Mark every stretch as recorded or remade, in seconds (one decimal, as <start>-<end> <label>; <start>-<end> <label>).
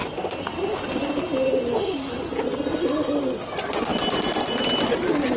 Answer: 0.0-5.4 recorded